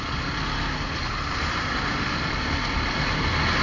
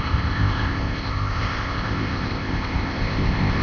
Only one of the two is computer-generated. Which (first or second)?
second